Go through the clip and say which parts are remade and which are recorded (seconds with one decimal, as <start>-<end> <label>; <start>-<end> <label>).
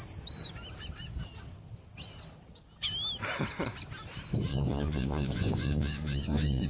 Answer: 0.0-4.5 recorded; 4.5-6.7 remade